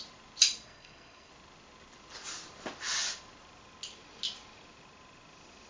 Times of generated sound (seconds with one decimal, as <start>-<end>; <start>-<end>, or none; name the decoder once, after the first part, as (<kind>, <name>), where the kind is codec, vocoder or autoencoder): 0.6-1.3 (codec, SNAC)